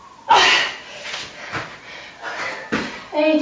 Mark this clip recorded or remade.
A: recorded